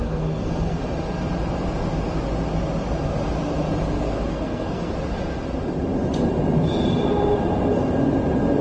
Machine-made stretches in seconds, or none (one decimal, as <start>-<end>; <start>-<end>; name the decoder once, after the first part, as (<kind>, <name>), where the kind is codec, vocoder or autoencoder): 0.0-0.8 (codec, SNAC); 4.3-4.9

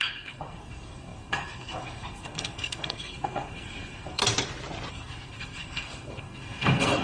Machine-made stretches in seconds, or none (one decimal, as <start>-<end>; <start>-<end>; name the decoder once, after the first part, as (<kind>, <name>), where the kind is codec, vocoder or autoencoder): 0.0-4.2 (codec, SNAC); 4.9-7.0

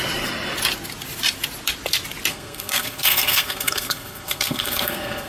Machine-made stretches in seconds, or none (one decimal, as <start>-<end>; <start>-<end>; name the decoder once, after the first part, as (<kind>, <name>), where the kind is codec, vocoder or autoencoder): 2.3-5.3 (codec, SNAC)

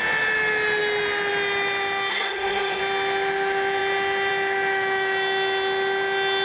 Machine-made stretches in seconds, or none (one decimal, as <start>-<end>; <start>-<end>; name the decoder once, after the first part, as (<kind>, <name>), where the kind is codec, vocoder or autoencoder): 2.1-2.8 (codec, SNAC)

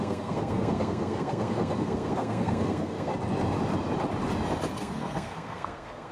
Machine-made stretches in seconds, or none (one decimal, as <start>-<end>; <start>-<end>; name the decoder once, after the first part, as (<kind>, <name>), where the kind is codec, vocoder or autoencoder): 0.0-3.1 (codec, SNAC); 4.8-6.1

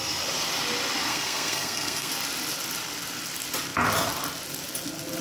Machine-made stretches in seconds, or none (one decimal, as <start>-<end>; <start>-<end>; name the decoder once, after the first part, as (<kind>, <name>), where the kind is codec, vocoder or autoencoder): 1.1-2.1 (codec, SNAC)